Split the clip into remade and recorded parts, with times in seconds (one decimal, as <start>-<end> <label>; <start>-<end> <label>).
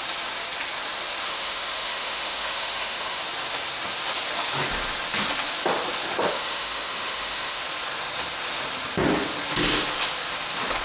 0.0-1.3 recorded; 1.3-3.2 remade; 3.2-6.3 recorded; 6.3-7.6 remade; 7.6-10.8 recorded